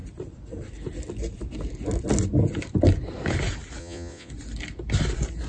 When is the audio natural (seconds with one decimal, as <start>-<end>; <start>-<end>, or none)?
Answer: 0.0-3.8; 4.3-5.5